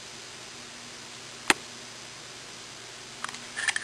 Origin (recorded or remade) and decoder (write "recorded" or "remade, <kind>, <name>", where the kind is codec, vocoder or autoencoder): recorded